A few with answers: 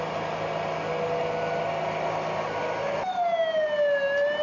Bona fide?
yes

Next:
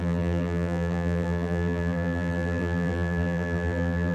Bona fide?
no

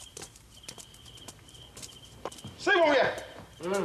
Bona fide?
no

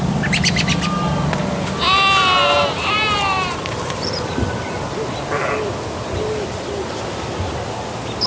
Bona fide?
yes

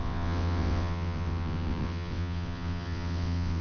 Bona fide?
no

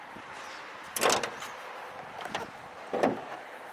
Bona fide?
yes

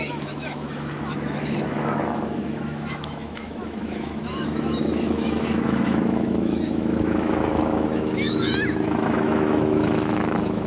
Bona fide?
no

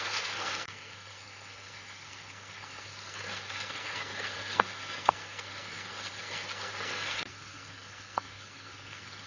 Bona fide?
no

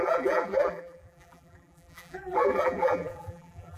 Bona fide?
no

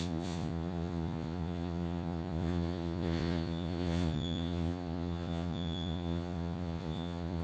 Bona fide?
no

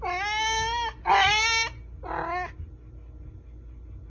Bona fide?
yes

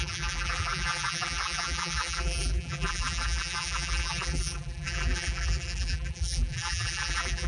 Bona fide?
no